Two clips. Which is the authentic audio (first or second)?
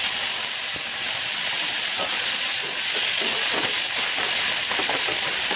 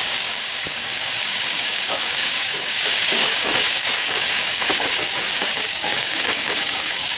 first